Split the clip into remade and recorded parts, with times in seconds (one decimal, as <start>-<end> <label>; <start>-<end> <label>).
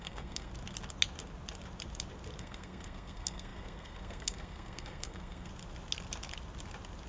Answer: 0.0-0.5 remade; 0.5-2.4 recorded; 2.4-5.5 remade; 5.5-7.1 recorded